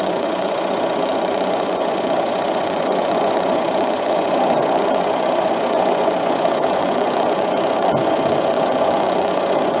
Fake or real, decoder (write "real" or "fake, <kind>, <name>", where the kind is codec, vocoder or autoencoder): fake, vocoder, Vocos